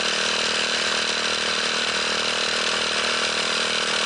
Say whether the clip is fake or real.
real